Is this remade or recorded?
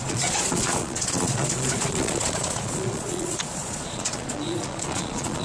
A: remade